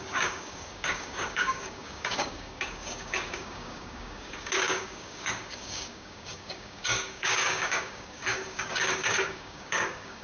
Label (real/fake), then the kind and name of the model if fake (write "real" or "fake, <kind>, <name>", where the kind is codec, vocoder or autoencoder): fake, codec, DAC